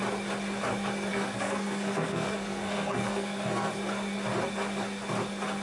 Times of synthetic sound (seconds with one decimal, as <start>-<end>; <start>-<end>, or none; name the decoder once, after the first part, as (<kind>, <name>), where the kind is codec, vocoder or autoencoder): 1.1-3.7 (codec, SNAC)